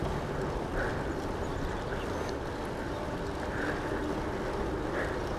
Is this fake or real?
real